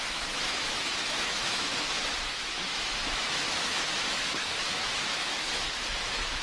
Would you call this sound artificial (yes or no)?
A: yes